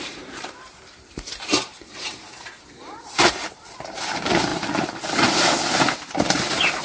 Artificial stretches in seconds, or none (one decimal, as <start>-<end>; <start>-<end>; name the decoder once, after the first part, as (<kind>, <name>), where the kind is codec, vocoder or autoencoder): 0.0-6.8 (vocoder, BigVGAN v2)